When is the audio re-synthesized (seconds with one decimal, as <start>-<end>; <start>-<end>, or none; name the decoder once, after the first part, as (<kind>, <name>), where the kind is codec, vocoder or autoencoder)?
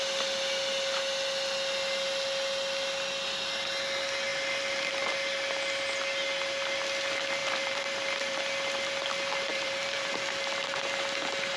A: 4.3-4.9 (vocoder, BigVGAN v2); 7.4-8.4; 9.5-10.1